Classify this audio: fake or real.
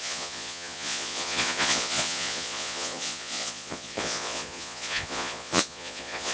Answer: fake